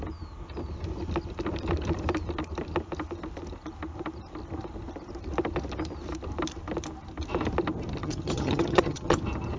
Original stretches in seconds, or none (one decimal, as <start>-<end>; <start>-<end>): 0.0-8.0; 9.2-9.6

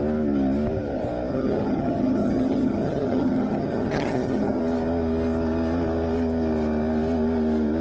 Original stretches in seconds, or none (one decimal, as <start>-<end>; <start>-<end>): 0.0-1.3; 4.6-7.8

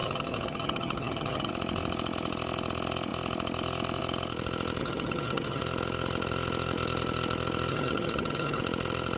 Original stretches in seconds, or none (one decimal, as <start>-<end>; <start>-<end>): 1.5-4.8; 5.6-7.7; 8.6-9.2

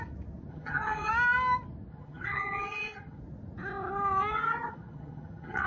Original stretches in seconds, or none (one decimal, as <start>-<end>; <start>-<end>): 0.0-0.5; 1.1-1.9; 3.2-4.3

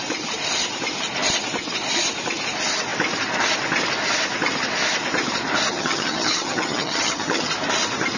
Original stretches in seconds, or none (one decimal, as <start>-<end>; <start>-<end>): 0.0-5.7; 7.5-8.2

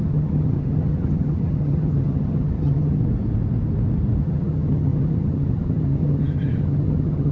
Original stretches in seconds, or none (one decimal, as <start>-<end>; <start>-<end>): 3.0-4.2

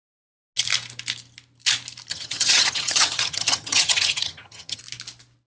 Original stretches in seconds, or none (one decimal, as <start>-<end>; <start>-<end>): 0.0-2.1; 4.8-5.5